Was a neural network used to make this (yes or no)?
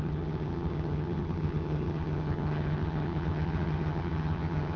yes